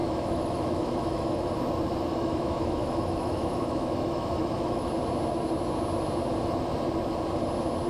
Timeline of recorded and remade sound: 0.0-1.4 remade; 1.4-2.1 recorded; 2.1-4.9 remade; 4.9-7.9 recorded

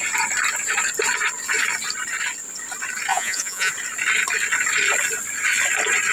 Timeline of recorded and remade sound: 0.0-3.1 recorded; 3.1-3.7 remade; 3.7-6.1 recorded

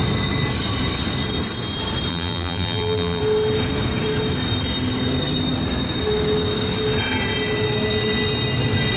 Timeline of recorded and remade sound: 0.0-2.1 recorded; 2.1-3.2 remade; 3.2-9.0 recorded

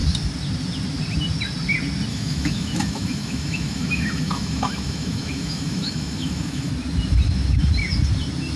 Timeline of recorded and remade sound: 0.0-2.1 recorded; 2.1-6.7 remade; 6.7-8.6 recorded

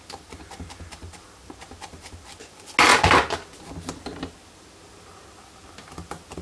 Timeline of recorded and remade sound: 0.0-6.4 recorded

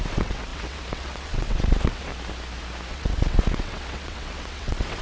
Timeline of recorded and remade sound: 0.0-2.1 remade; 2.1-2.9 recorded; 2.9-5.0 remade

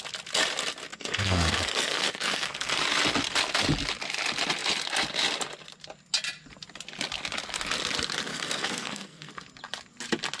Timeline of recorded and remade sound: 0.0-0.9 recorded; 0.9-2.7 remade; 2.7-8.3 recorded; 8.3-9.3 remade; 9.3-10.4 recorded